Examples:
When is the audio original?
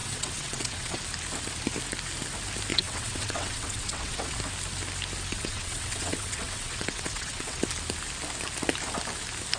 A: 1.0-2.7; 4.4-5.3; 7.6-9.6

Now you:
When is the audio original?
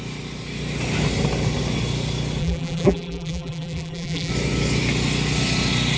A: 0.0-2.4; 4.3-6.0